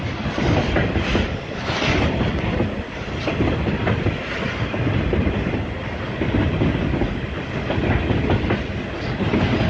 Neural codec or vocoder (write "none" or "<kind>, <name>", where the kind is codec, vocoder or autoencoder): none